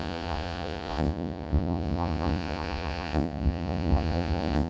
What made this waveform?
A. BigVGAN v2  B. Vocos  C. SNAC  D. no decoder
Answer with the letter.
B